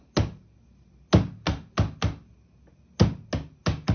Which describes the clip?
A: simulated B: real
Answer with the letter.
B